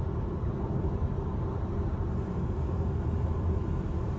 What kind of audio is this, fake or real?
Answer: real